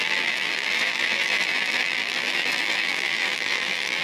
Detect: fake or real fake